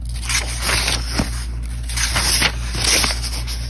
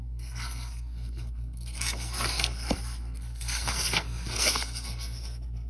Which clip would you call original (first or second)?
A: first